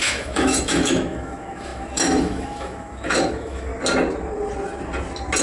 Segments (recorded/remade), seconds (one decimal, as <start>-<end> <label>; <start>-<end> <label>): 0.0-3.7 remade; 3.7-5.4 recorded